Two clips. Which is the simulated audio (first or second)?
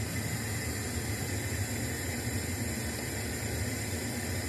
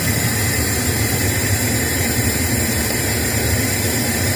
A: second